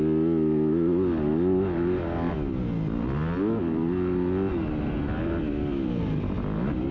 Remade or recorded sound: recorded